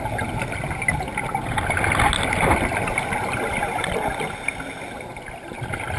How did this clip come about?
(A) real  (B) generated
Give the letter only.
A